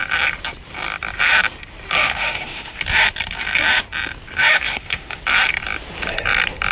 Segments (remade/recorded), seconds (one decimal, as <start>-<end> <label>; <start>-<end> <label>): 0.0-2.0 recorded; 2.0-2.8 remade; 2.8-4.4 recorded; 4.4-5.2 remade; 5.2-6.7 recorded